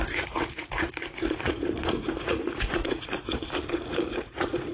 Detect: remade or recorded remade